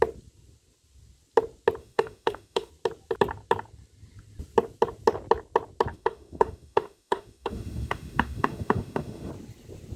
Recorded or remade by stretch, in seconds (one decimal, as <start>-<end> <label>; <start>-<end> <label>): 0.0-1.8 recorded; 1.8-2.7 remade; 2.7-5.9 recorded; 5.9-9.3 remade; 9.3-10.0 recorded